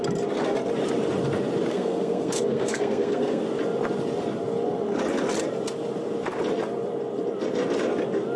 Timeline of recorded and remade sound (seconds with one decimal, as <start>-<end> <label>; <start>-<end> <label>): 0.0-1.7 recorded; 1.7-3.4 remade; 3.4-8.4 recorded